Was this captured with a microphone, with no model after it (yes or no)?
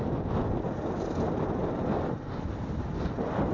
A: yes